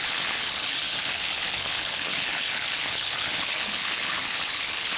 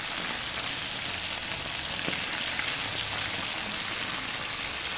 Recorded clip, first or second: second